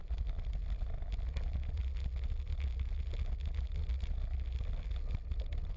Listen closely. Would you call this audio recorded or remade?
recorded